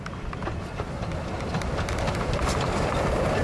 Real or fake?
real